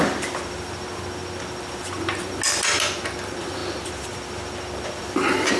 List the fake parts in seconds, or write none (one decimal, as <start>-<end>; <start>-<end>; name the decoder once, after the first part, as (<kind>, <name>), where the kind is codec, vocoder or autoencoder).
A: none